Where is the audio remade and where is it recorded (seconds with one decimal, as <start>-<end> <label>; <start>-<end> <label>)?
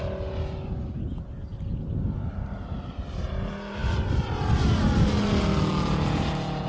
0.0-6.7 recorded